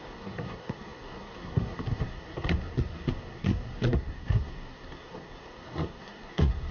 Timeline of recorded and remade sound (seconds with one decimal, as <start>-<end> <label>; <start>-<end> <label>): 0.0-6.7 remade